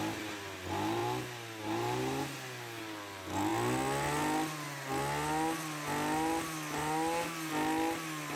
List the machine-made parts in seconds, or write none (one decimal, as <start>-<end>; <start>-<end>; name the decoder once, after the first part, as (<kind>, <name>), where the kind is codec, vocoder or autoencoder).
none